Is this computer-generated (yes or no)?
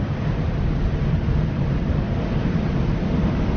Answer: no